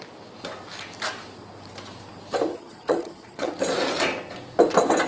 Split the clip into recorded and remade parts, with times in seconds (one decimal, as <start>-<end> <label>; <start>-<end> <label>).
0.0-2.5 recorded; 2.5-3.5 remade; 3.5-5.1 recorded